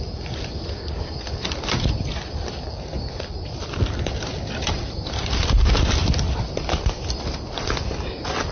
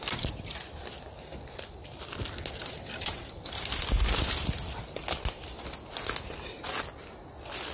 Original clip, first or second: second